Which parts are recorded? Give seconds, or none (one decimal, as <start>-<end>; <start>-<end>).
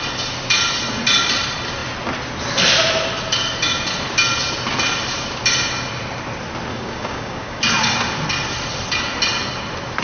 0.0-6.7; 7.6-10.0